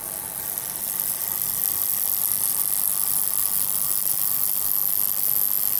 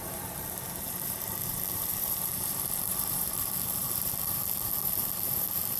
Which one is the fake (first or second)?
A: second